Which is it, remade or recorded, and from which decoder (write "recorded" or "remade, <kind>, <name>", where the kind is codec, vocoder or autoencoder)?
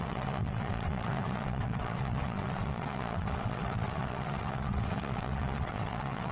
remade, vocoder, WaveNeXt